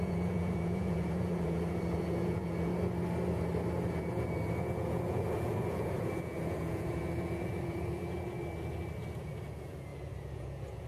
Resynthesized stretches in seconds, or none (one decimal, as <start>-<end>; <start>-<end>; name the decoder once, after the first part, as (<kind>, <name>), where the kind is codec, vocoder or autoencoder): 0.0-2.7 (vocoder, Vocos); 3.9-8.4; 9.2-10.9